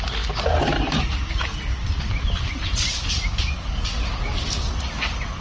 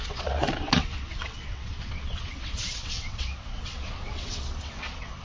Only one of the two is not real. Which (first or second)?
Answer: second